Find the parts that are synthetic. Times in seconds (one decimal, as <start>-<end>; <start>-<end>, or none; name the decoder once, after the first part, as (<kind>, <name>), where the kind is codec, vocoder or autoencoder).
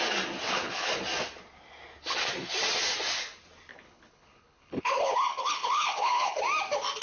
0.5-1.0 (codec, HILCodec); 3.7-6.4